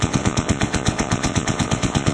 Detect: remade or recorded remade